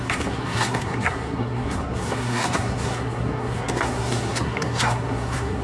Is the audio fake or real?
fake